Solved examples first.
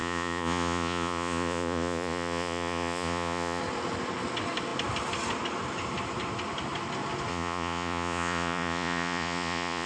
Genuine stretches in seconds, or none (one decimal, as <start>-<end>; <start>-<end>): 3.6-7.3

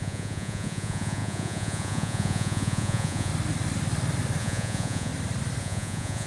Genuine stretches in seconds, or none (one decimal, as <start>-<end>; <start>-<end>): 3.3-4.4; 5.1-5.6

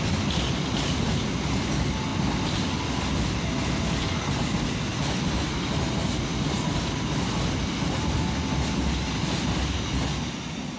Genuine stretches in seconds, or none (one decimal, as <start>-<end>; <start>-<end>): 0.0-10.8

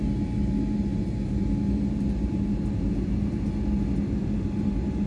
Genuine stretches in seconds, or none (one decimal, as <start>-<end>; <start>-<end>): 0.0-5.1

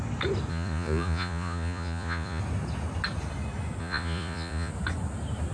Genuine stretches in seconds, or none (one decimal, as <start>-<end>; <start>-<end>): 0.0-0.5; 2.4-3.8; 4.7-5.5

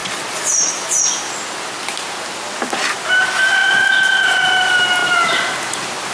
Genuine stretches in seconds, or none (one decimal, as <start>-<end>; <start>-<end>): 1.0-6.1

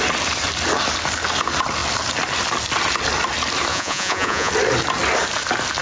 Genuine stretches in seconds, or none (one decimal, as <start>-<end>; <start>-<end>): 0.0-3.7; 4.5-5.8

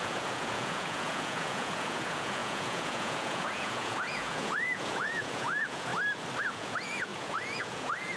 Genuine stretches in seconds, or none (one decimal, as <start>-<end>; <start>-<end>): 5.9-6.4